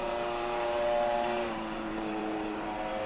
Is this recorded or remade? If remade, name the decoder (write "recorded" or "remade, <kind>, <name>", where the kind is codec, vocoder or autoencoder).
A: remade, vocoder, BigVGAN v2